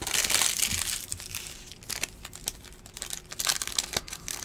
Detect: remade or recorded recorded